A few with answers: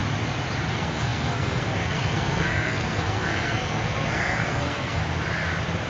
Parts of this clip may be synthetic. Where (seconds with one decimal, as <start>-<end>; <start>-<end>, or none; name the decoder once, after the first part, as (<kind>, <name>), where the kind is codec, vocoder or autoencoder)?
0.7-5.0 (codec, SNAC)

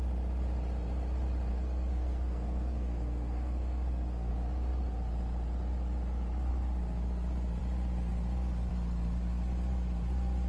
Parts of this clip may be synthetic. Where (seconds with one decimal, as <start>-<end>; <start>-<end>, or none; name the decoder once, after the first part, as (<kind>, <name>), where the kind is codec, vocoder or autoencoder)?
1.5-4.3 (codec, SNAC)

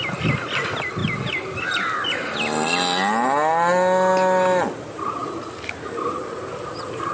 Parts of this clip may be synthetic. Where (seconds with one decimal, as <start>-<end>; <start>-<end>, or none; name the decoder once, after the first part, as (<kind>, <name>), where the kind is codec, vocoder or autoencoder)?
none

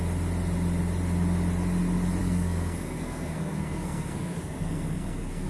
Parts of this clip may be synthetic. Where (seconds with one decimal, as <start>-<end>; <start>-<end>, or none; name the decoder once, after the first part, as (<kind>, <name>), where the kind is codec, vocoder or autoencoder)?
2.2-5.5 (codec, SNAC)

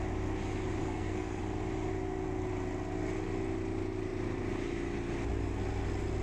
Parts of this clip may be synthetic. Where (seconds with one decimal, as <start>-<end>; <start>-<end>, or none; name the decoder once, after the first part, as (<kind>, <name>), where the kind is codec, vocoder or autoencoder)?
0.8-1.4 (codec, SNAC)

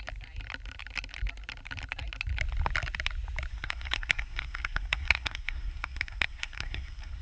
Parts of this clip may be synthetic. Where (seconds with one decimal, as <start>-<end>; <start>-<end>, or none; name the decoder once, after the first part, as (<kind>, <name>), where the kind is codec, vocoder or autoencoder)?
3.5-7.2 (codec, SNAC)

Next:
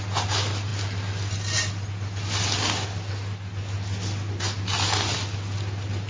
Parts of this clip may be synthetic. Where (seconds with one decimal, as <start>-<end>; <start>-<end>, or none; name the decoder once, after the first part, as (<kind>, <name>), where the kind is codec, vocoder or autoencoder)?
none